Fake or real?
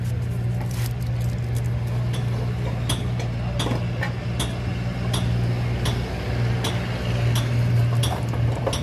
real